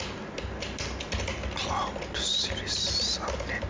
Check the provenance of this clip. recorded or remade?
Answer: recorded